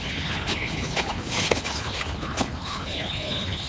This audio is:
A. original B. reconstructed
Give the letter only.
B